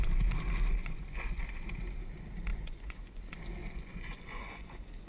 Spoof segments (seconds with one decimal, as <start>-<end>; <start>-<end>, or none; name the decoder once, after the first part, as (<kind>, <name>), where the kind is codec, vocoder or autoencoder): 0.8-1.4 (vocoder, Vocos); 2.5-3.2; 3.6-5.1